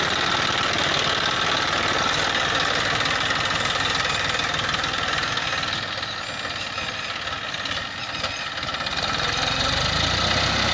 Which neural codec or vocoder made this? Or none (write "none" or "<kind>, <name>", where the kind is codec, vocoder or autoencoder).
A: none